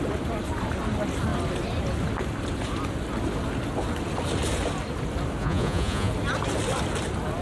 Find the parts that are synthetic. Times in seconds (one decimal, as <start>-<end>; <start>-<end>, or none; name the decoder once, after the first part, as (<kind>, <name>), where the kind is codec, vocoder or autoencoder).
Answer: 5.4-6.1 (vocoder, Vocos)